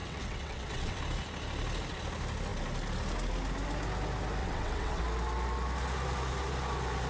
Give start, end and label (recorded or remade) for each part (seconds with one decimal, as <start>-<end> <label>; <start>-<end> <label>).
0.0-1.0 remade; 1.0-4.4 recorded; 4.4-5.0 remade; 5.0-7.1 recorded